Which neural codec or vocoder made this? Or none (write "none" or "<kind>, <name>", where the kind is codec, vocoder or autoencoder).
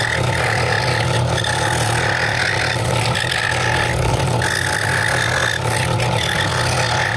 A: none